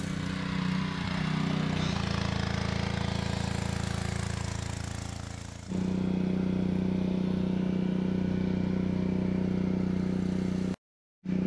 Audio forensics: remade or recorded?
recorded